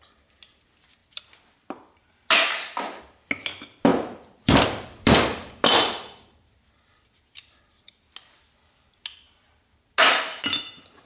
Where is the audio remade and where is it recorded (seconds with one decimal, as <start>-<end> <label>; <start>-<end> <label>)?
0.0-11.1 recorded